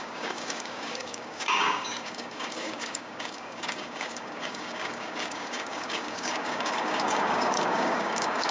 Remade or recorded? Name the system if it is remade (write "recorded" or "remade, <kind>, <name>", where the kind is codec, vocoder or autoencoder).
remade, codec, DAC